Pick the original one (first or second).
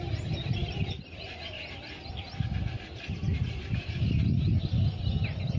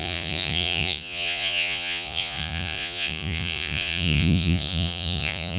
first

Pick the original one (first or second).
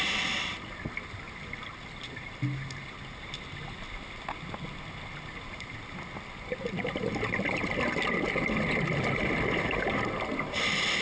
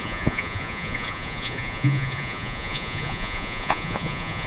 first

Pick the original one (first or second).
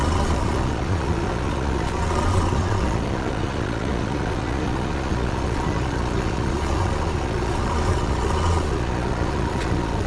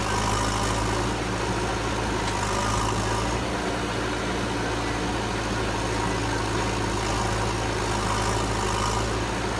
second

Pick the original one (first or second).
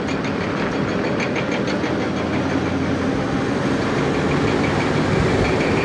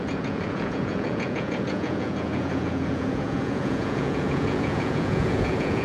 first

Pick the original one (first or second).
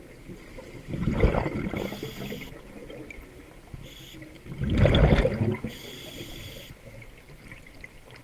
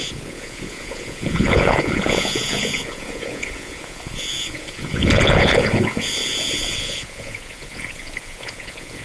first